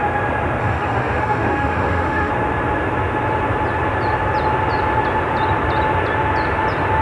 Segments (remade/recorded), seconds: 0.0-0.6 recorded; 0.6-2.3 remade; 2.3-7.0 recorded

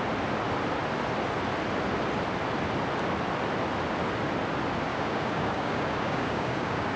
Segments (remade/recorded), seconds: 0.0-4.9 recorded; 4.9-7.0 remade

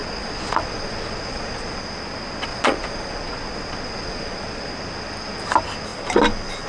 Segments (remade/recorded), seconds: 0.0-1.8 remade; 1.8-2.5 recorded; 2.5-4.7 remade; 4.7-6.7 recorded

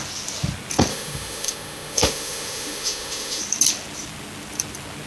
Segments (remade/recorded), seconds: 0.0-0.9 recorded; 0.9-3.4 remade; 3.4-5.1 recorded

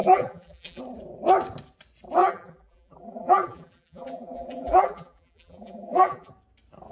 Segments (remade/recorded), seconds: 0.0-0.8 remade; 0.8-2.2 recorded; 2.2-6.3 remade; 6.3-6.9 recorded